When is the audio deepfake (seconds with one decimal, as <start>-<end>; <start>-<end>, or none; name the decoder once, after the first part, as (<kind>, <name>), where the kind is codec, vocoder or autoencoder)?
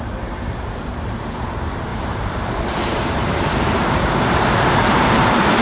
0.0-5.6 (vocoder, BigVGAN v2)